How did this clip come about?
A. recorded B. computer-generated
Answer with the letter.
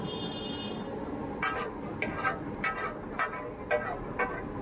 A